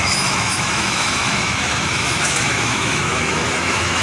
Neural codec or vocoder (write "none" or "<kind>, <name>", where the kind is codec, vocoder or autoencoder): autoencoder, DAC-VAE